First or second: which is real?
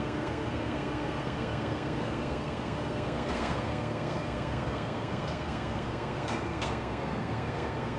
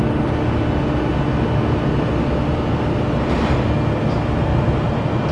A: second